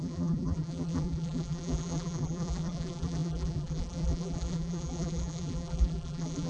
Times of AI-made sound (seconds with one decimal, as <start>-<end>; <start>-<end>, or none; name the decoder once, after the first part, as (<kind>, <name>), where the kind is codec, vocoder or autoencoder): 0.0-6.5 (vocoder, BigVGAN v2)